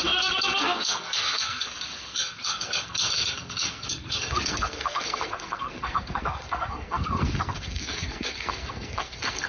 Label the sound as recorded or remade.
remade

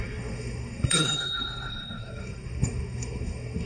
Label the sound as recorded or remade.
remade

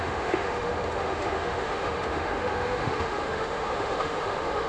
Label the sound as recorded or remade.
remade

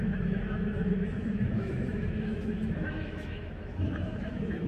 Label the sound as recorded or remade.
remade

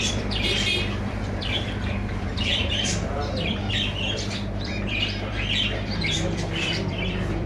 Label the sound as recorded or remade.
remade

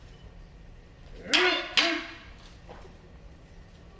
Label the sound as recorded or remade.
recorded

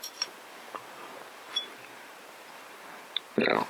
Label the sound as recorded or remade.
remade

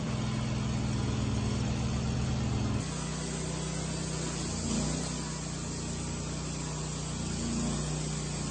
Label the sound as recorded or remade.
recorded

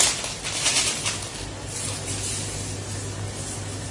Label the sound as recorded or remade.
recorded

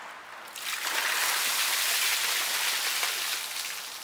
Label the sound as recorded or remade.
recorded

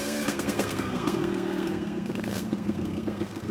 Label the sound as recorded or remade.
remade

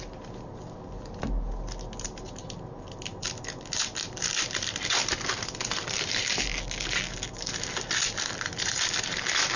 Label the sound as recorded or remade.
recorded